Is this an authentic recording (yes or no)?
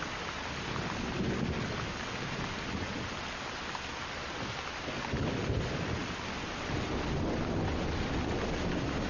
yes